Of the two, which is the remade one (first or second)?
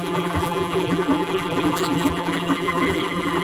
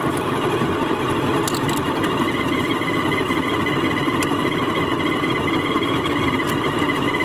first